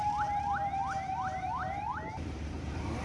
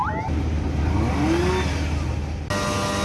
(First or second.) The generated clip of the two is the first